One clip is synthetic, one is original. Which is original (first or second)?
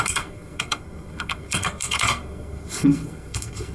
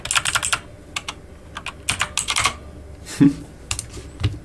second